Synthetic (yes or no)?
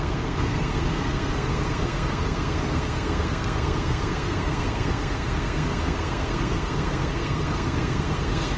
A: yes